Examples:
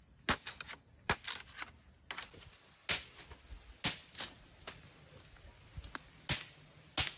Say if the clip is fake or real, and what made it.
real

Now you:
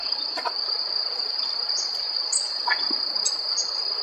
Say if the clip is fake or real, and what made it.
real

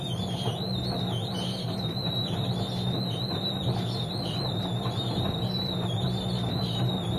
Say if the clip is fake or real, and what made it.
real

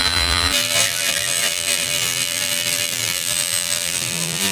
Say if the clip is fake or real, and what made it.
fake, vocoder, BigVGAN v2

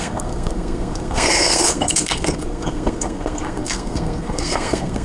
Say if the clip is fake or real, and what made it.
fake, codec, SNAC